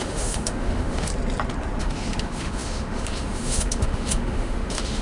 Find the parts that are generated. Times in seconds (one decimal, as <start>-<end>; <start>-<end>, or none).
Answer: 0.0-1.1; 1.8-5.0